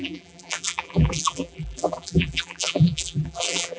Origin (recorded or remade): remade